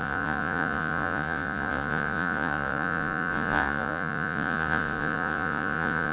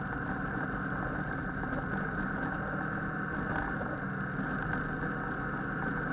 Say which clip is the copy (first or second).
first